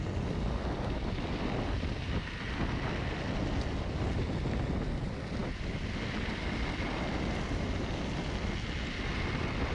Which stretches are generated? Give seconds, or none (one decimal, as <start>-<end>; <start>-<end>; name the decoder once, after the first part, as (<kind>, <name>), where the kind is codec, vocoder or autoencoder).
none